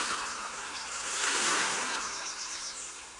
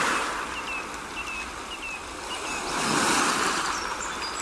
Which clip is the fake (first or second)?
first